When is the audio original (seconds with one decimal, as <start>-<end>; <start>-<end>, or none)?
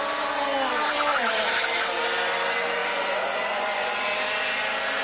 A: 0.0-2.8; 3.9-5.0